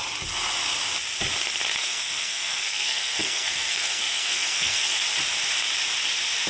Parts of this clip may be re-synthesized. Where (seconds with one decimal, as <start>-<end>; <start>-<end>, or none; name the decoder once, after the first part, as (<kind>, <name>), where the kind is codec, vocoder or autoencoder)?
1.8-5.0 (codec, SNAC)